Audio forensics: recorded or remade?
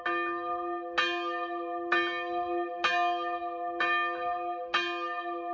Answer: recorded